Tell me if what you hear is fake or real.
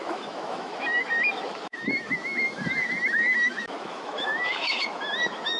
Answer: fake